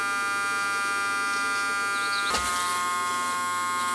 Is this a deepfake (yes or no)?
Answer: no